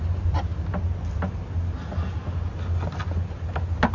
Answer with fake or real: real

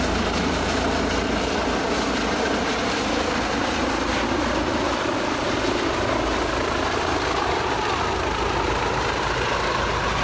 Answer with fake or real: real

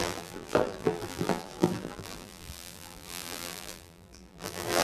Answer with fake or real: fake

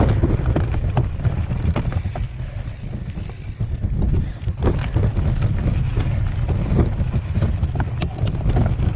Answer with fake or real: real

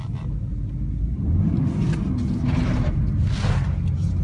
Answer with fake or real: real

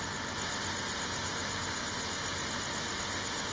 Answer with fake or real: real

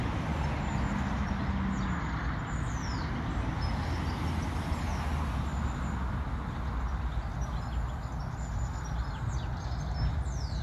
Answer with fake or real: real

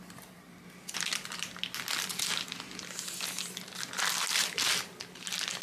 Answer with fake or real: real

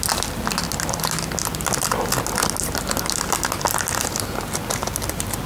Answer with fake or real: real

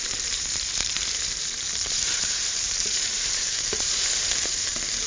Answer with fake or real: fake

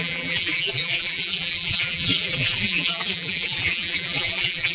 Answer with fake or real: fake